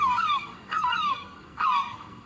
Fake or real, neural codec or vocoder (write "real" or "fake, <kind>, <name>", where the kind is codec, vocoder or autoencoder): fake, codec, SNAC